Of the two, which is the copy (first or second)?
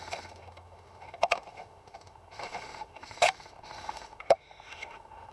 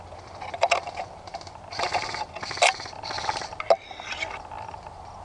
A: first